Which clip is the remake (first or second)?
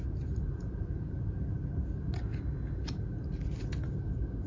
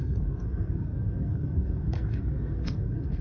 second